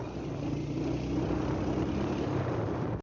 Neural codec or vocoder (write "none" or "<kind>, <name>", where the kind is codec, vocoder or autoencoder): none